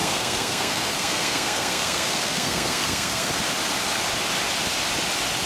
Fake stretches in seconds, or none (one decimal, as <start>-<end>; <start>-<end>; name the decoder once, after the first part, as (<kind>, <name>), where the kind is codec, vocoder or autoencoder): 0.0-3.3 (codec, SNAC)